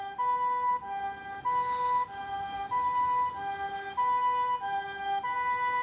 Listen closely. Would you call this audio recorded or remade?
recorded